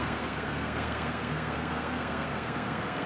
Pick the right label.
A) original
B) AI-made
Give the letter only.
B